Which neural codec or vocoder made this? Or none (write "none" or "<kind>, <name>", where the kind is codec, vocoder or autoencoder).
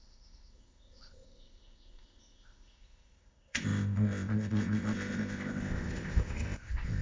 codec, ZipCodec